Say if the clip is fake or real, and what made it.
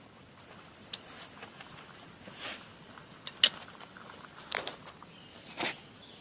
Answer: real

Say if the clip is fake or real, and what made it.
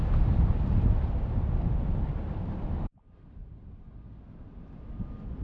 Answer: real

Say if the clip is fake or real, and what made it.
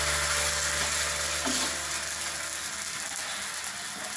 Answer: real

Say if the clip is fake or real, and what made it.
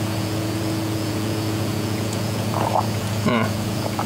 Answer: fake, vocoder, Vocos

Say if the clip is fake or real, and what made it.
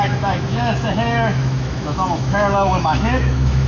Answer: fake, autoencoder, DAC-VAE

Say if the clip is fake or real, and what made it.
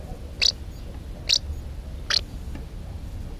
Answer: real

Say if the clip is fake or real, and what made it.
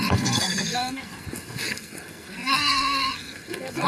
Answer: fake, codec, SNAC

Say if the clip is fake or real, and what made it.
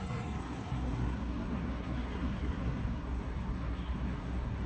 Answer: fake, codec, SNAC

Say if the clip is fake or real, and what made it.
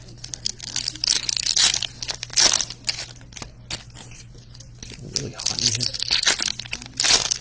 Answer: real